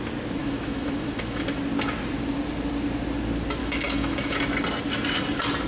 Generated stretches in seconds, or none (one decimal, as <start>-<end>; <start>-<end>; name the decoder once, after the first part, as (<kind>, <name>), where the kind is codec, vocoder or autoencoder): 0.4-1.6 (autoencoder, DAC-VAE); 3.6-4.4